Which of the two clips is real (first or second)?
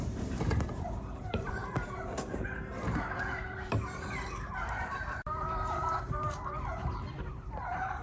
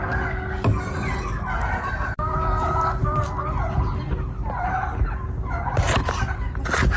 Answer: second